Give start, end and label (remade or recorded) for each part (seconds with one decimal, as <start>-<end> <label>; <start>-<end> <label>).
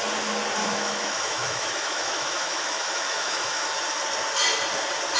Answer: 0.0-0.6 recorded; 0.6-3.7 remade; 3.7-5.2 recorded